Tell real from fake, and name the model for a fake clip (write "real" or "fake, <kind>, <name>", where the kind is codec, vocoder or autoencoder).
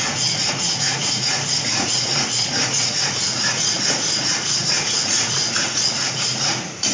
fake, vocoder, Vocos